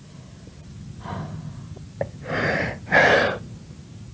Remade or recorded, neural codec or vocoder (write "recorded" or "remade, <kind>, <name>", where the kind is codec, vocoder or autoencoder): recorded